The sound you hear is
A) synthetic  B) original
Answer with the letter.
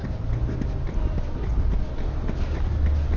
B